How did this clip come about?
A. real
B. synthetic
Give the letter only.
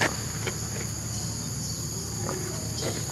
A